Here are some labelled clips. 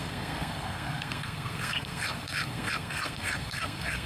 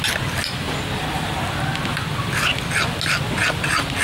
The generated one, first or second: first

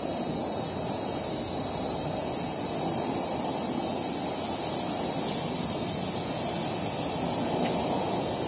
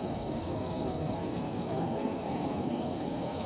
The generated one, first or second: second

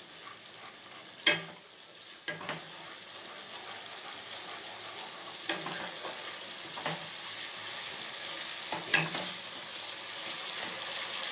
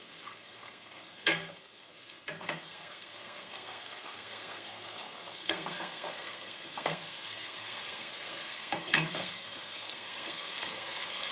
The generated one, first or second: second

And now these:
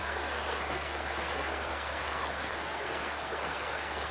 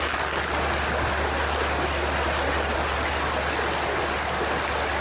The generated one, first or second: first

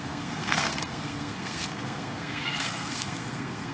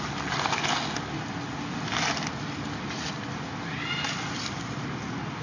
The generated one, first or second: first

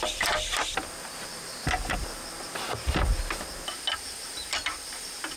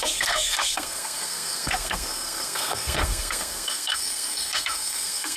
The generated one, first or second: second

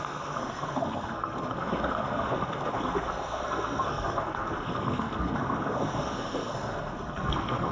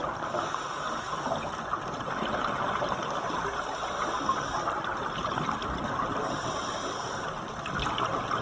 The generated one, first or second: first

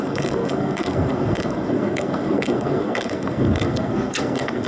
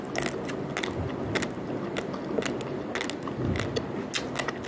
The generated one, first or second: first